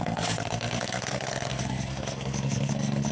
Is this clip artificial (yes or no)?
yes